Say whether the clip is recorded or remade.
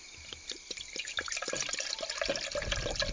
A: recorded